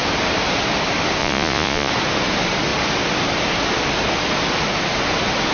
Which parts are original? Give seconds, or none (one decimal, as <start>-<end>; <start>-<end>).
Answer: 0.0-1.2; 1.9-5.5